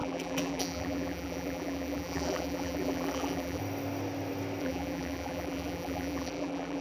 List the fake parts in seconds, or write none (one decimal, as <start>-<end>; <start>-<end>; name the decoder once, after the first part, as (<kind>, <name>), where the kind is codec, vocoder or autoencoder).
0.0-3.6 (vocoder, BigVGAN v2); 4.6-6.8